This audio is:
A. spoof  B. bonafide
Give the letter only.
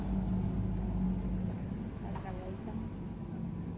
B